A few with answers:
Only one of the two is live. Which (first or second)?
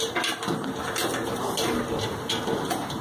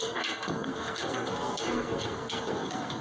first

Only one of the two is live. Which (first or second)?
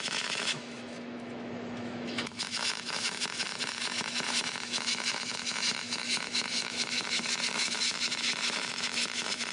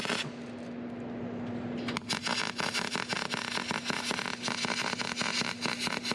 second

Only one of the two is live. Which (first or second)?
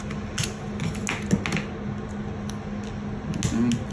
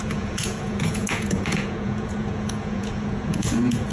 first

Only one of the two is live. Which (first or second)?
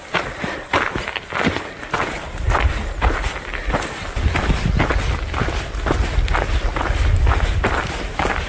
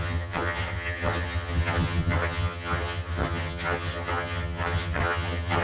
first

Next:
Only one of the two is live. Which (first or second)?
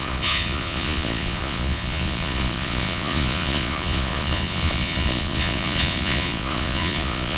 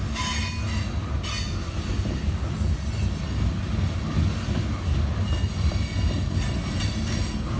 second